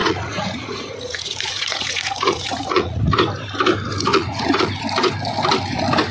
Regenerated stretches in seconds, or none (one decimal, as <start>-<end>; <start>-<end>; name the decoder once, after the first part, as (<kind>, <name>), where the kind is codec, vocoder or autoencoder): 0.0-3.0 (vocoder, Vocos); 4.1-4.7